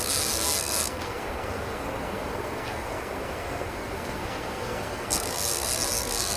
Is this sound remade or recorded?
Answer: remade